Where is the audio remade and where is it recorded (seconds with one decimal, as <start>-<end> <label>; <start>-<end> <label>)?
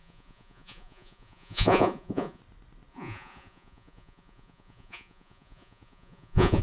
0.0-2.4 remade; 2.4-2.9 recorded; 2.9-6.6 remade